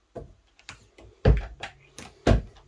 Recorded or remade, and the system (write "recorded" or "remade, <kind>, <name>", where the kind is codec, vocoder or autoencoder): recorded